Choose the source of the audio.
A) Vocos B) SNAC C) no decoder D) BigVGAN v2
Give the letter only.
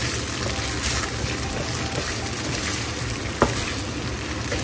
C